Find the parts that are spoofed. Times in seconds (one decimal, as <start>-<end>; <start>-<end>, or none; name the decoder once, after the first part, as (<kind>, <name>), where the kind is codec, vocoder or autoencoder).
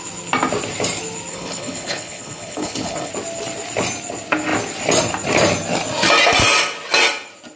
1.3-3.1 (codec, HILCodec)